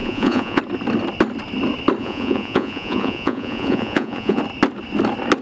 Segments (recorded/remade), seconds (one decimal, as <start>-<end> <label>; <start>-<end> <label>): 0.0-0.6 remade; 0.6-2.0 recorded; 2.0-4.4 remade; 4.4-5.4 recorded